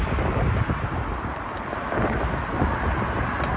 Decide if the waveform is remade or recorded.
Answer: recorded